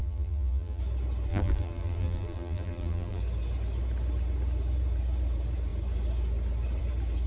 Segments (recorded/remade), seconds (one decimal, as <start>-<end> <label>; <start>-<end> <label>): 0.0-0.8 remade; 0.8-1.3 recorded; 1.3-3.2 remade; 3.2-7.3 recorded